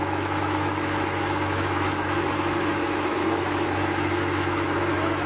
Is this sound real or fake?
fake